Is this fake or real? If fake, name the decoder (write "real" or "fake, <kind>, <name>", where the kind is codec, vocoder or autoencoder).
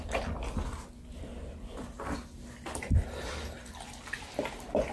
real